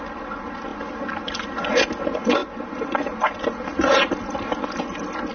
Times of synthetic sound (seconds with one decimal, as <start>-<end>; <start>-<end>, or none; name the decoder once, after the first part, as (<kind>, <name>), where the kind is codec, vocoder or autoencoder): none